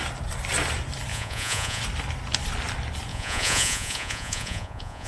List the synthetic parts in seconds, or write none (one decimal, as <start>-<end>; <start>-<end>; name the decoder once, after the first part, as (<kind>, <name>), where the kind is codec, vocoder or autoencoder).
1.1-1.8 (vocoder, Vocos); 3.1-5.1